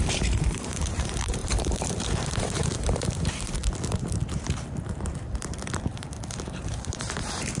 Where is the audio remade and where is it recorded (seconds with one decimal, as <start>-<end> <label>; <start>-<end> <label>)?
0.0-3.6 remade; 3.6-5.9 recorded; 5.9-7.6 remade

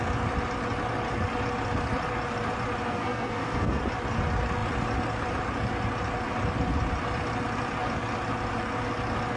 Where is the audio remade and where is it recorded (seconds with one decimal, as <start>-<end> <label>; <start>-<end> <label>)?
0.0-2.9 recorded; 2.9-3.8 remade; 3.8-9.4 recorded